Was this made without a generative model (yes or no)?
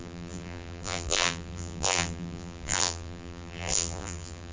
no